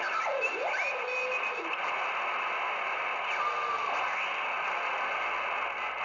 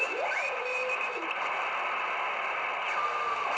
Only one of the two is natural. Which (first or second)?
first